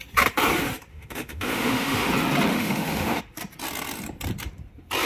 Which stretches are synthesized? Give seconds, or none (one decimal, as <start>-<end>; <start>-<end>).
0.9-2.1; 2.5-3.2